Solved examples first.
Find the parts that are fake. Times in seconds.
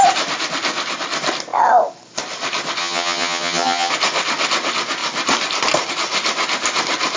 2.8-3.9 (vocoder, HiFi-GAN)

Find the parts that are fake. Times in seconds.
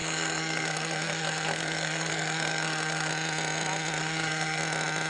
0.0-3.1 (codec, SNAC); 4.0-4.6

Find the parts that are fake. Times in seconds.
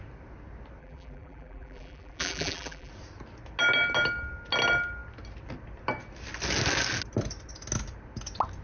0.8-2.9 (vocoder, BigVGAN v2)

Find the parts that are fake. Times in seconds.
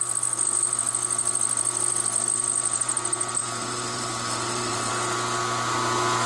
3.4-4.9 (vocoder, BigVGAN v2)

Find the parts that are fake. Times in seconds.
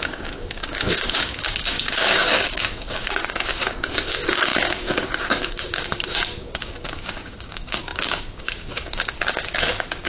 0.0-10.1 (codec, DAC)